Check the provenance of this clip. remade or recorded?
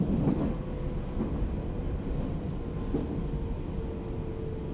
recorded